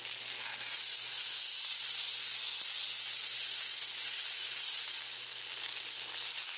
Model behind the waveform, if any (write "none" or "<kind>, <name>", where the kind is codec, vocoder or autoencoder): none